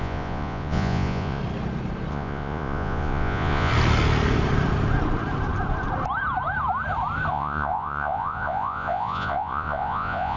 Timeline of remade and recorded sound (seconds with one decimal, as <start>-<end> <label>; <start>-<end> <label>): 0.0-1.4 remade; 1.4-2.1 recorded; 2.1-3.7 remade; 3.7-7.3 recorded; 7.3-10.4 remade

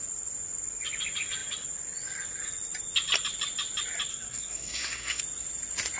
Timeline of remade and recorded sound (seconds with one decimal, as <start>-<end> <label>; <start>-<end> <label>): 0.0-4.1 recorded; 4.1-5.2 remade; 5.2-6.0 recorded

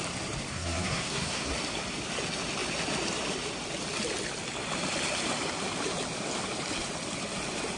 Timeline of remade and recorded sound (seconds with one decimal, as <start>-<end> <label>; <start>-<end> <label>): 0.0-0.5 recorded; 0.5-1.5 remade; 1.5-7.8 recorded